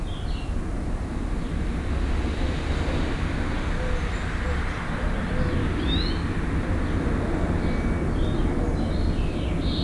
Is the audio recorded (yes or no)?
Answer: yes